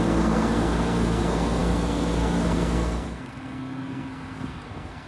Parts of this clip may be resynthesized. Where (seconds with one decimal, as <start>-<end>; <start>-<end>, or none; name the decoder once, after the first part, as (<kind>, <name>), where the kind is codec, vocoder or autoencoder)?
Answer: 0.0-5.1 (codec, SNAC)